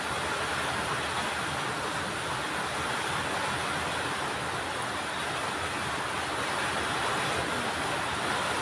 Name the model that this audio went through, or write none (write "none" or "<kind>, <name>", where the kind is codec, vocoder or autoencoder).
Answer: none